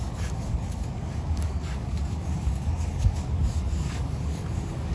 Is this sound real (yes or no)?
no